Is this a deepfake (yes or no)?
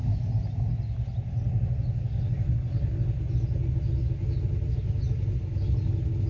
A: no